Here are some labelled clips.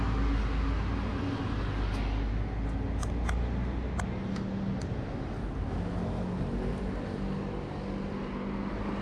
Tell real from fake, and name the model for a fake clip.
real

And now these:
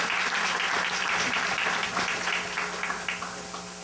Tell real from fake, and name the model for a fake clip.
real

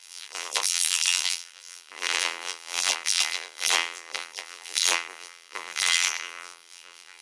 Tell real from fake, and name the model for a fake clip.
fake, vocoder, BigVGAN v2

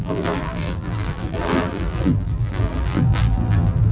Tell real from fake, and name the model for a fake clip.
fake, vocoder, BigVGAN v2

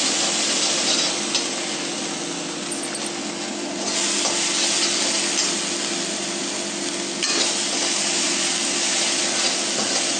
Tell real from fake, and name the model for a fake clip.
real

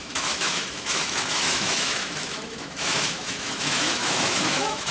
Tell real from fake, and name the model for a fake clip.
fake, autoencoder, DAC-VAE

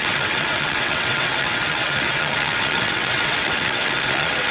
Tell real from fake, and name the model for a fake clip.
fake, vocoder, WaveNeXt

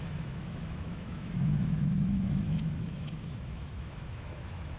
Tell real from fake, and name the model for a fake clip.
fake, autoencoder, DAC-VAE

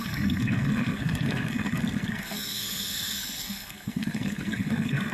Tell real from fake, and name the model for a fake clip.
fake, codec, SNAC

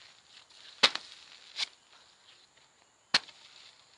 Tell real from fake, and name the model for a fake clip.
real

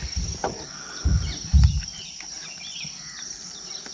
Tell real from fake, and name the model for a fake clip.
real